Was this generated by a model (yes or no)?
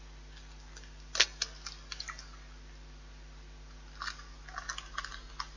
no